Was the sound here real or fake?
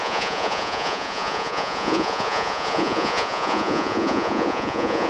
fake